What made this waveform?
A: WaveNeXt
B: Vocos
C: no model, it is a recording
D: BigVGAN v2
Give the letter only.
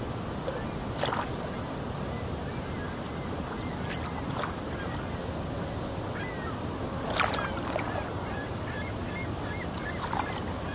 C